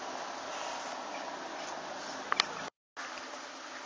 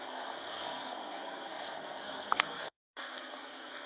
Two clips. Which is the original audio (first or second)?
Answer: first